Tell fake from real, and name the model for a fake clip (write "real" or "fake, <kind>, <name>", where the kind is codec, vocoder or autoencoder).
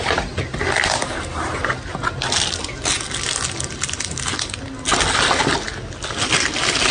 real